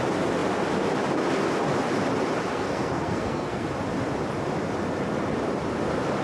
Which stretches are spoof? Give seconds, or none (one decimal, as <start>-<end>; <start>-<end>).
2.5-3.7